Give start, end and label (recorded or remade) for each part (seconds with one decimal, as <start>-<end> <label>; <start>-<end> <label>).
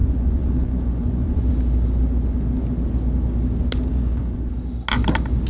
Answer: 0.0-1.5 remade; 1.5-3.9 recorded; 3.9-4.5 remade; 4.5-5.5 recorded